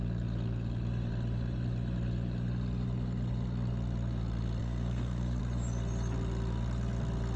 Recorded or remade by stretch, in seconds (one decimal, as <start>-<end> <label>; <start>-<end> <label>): 0.0-4.6 recorded; 4.6-5.4 remade; 5.4-7.4 recorded